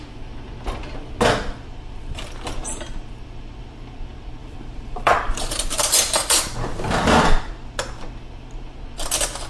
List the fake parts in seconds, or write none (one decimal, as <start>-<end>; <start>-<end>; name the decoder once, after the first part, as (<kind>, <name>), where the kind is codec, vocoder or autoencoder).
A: 4.4-6.0 (vocoder, BigVGAN v2)